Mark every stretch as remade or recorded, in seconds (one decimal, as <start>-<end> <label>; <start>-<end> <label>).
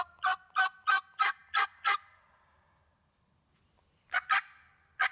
0.0-5.1 recorded